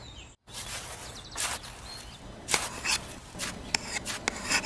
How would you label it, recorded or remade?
recorded